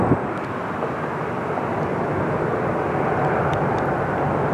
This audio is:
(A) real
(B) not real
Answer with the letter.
A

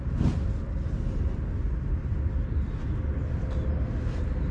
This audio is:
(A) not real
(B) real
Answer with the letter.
B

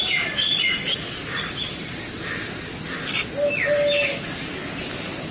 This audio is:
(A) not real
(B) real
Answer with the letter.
B